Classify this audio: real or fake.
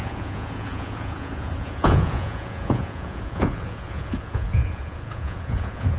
fake